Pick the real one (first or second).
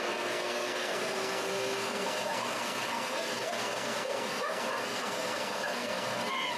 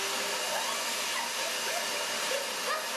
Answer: second